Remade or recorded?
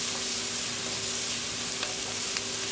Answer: recorded